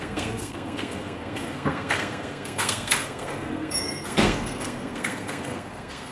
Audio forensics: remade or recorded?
remade